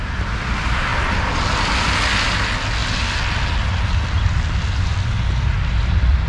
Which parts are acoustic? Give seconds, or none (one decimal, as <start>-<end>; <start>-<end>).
0.0-4.9